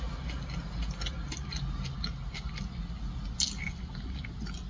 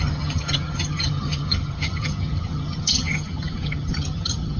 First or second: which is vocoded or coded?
second